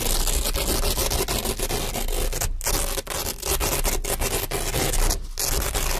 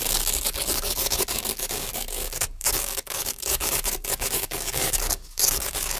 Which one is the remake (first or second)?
second